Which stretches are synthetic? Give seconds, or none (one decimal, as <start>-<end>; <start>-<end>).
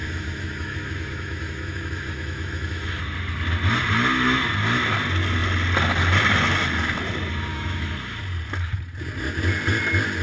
0.0-3.0; 7.5-8.2